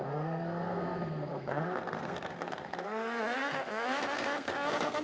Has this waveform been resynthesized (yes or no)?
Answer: yes